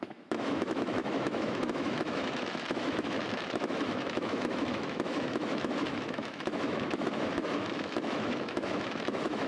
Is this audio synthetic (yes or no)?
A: yes